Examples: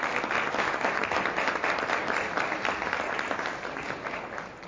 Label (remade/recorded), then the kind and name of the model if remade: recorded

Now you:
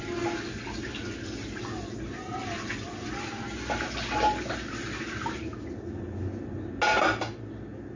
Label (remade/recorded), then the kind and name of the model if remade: recorded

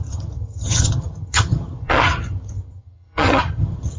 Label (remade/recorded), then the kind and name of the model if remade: remade, vocoder, HiFi-GAN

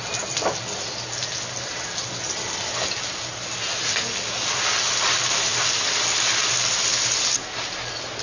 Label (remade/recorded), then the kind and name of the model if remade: recorded